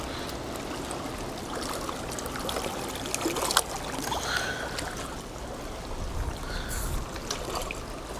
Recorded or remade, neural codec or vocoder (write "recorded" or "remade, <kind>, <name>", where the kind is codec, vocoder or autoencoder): recorded